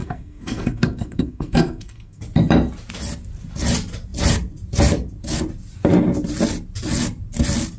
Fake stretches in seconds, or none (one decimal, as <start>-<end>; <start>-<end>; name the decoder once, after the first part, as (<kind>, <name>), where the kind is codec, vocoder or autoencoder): 0.0-2.2 (codec, SNAC)